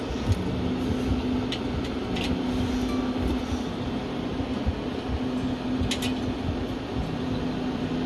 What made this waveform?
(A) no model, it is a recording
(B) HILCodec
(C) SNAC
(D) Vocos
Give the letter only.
A